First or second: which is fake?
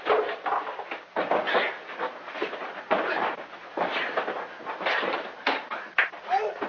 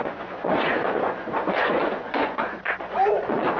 second